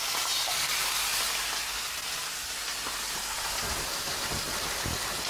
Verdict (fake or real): real